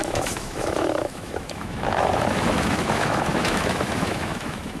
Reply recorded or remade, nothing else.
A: remade